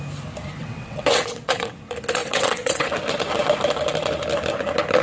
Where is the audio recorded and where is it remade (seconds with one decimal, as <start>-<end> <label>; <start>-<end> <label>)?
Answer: 0.0-0.6 recorded; 0.6-1.7 remade; 1.7-2.2 recorded; 2.2-2.9 remade; 2.9-5.0 recorded